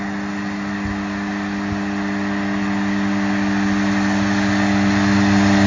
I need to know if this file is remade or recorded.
recorded